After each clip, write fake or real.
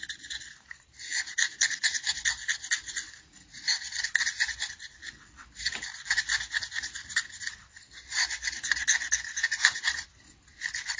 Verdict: real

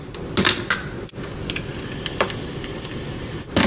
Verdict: real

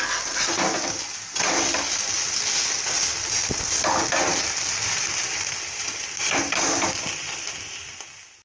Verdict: real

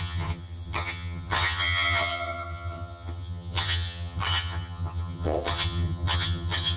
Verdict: fake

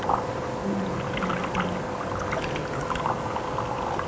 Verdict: real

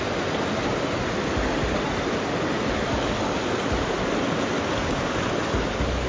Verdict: real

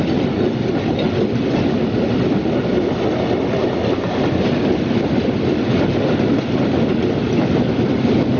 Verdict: real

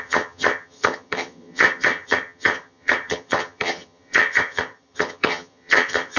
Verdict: fake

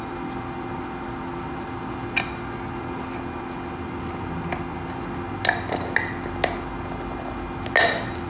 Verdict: real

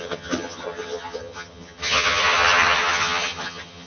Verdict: fake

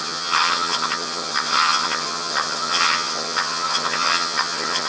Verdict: fake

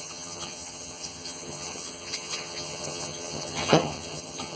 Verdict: fake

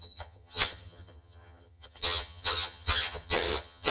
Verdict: fake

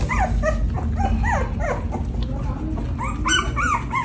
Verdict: real